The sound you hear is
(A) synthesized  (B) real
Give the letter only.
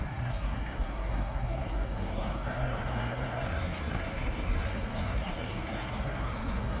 A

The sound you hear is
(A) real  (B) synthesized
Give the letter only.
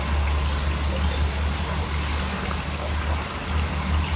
A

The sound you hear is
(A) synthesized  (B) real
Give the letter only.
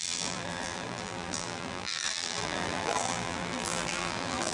A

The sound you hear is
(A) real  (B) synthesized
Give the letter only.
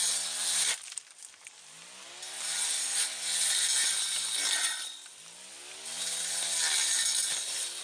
A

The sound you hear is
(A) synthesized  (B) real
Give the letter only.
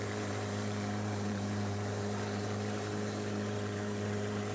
A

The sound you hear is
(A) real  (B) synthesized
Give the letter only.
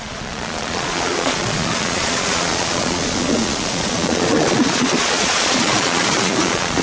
B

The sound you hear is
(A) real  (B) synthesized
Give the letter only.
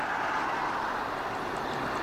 A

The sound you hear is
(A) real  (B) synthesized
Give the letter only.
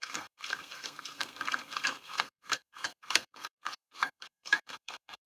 B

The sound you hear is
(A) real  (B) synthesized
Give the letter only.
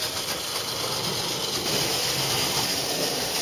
B